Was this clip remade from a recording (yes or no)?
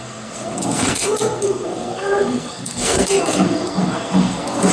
yes